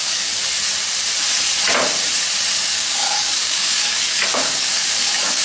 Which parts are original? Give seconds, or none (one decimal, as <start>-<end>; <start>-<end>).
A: 0.4-2.5